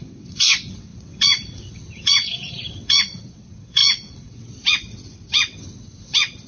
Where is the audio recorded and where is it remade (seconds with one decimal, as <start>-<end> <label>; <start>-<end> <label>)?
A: 0.0-6.5 remade